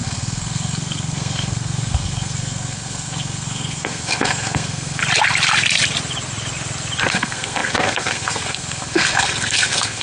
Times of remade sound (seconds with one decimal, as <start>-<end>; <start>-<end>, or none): 0.0-5.0; 7.1-10.0